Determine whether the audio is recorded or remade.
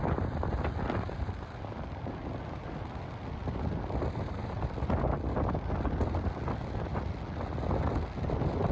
recorded